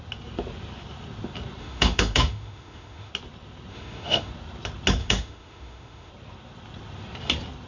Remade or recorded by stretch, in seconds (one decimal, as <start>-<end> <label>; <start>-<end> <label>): 0.0-1.6 recorded; 1.6-3.1 remade; 3.1-3.7 recorded; 3.7-4.3 remade; 4.3-5.0 recorded; 5.0-6.1 remade; 6.1-7.7 recorded